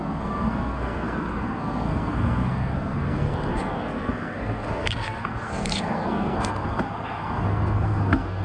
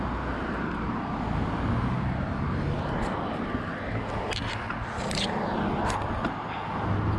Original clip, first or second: second